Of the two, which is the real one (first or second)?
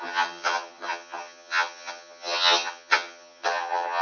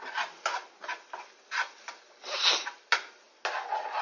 second